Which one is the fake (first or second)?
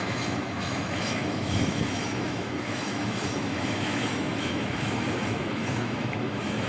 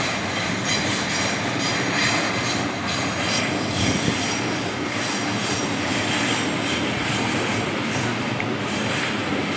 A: first